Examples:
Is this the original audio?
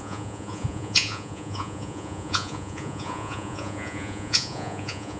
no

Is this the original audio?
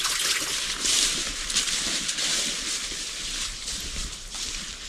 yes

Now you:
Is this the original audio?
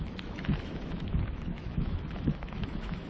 no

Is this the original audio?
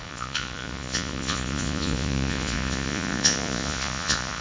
no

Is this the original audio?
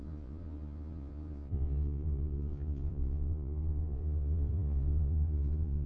no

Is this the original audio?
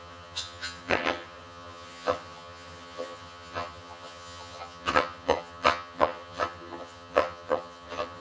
no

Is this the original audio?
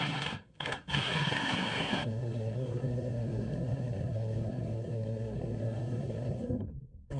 no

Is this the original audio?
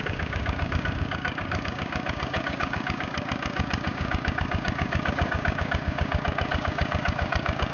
no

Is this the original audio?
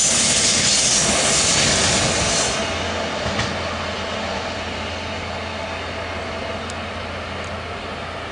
yes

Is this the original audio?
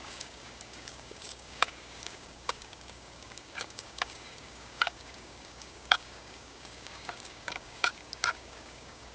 no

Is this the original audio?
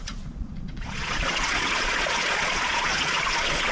no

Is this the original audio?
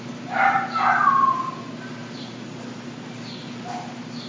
yes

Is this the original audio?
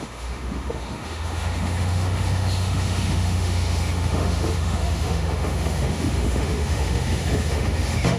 no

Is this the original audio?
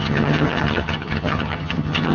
no